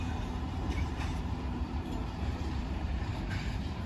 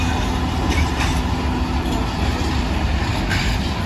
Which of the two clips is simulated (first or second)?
first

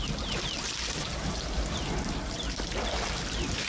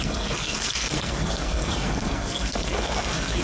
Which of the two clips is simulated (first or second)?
second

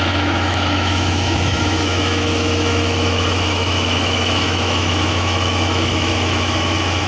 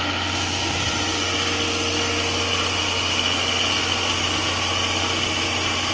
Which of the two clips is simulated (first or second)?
first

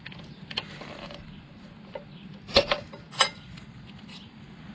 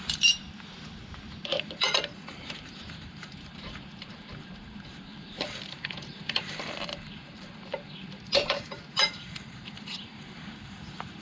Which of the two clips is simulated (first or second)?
second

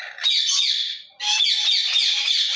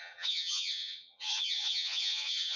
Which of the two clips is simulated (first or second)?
second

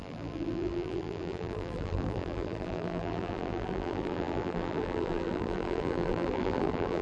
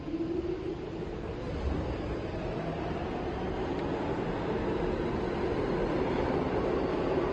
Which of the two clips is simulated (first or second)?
first